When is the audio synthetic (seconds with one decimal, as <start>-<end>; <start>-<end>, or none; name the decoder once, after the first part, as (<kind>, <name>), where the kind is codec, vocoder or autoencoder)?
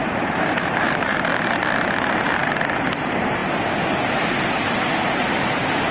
0.0-1.3 (vocoder, BigVGAN v2); 2.0-3.4; 5.1-5.9